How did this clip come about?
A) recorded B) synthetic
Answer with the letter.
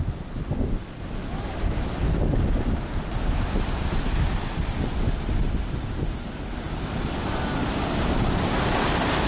A